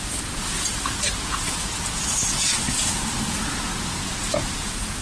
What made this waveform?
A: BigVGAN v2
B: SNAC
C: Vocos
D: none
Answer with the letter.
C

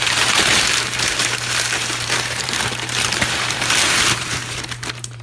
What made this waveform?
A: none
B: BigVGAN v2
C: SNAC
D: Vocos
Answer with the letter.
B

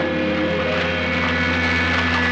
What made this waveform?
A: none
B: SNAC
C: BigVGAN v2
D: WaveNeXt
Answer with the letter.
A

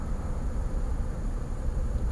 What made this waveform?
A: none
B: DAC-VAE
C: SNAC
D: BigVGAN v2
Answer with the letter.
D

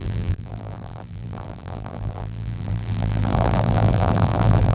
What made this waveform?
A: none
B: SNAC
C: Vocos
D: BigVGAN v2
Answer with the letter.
D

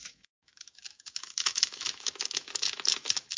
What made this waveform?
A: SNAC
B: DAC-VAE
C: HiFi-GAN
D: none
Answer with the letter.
B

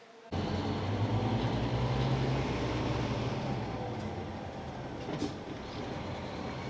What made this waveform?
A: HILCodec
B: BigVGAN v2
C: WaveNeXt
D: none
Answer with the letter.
D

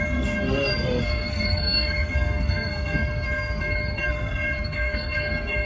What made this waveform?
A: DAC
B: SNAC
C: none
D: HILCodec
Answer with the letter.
B